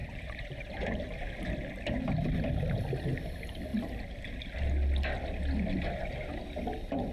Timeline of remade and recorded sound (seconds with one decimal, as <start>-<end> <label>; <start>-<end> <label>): 0.0-0.7 remade; 0.7-7.1 recorded